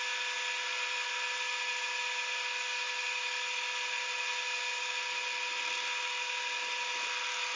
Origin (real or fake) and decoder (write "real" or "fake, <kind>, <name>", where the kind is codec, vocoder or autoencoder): real